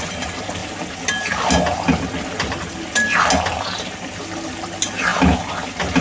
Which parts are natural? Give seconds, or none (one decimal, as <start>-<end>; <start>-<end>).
0.6-4.2; 5.1-6.0